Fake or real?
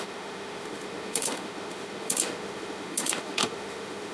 fake